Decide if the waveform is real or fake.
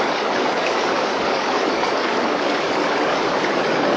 fake